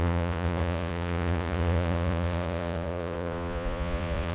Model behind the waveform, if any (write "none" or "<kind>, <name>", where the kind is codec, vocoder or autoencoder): vocoder, Vocos